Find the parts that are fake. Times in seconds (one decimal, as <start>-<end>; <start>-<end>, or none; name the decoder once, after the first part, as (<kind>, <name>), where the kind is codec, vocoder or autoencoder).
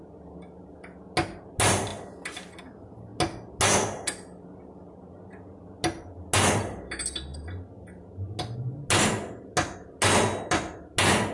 none